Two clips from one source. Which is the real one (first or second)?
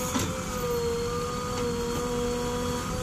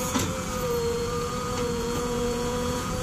first